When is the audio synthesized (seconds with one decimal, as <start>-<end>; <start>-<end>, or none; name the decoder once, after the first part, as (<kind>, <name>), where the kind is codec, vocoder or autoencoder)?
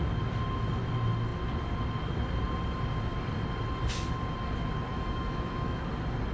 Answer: 4.9-5.8 (autoencoder, DAC-VAE)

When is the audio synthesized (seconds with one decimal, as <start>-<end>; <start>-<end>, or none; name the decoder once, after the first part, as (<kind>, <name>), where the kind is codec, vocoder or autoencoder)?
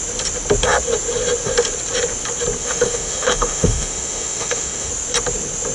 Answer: 2.6-4.9 (autoencoder, DAC-VAE)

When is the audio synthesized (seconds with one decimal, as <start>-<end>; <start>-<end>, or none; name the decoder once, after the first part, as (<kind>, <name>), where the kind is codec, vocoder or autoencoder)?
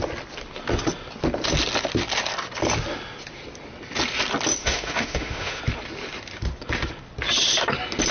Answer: 4.6-5.6 (autoencoder, DAC-VAE)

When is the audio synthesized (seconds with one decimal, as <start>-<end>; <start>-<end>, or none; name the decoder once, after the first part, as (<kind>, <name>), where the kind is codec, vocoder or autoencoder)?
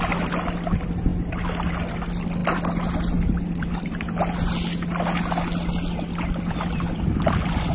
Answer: none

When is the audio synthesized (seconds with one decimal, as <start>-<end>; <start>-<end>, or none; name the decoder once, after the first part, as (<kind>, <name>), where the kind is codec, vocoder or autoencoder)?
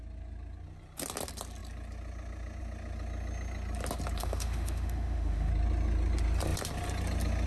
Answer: 4.2-5.5 (autoencoder, DAC-VAE)